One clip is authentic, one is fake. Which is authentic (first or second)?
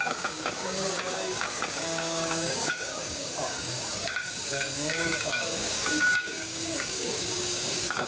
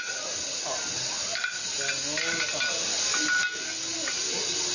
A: second